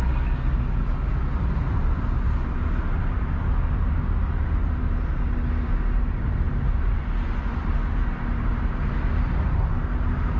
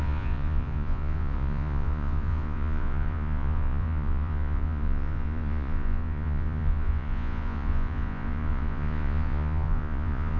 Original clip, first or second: first